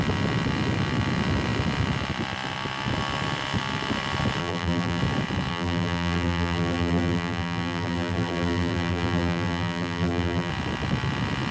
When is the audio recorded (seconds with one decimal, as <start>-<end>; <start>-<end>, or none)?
0.0-4.4; 5.0-5.5; 10.5-11.5